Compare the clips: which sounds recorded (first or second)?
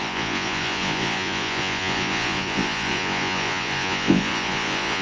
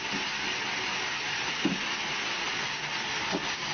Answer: second